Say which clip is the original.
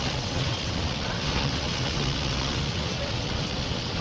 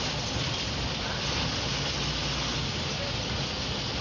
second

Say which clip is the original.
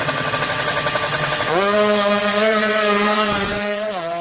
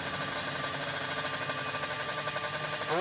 second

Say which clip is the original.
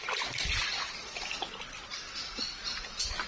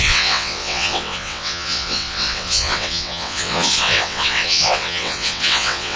first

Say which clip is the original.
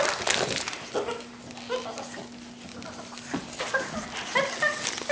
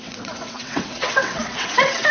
first